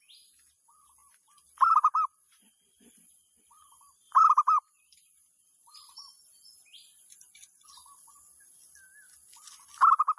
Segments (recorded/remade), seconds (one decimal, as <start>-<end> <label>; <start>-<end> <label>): 0.0-1.0 recorded; 1.0-6.2 remade; 6.2-10.2 recorded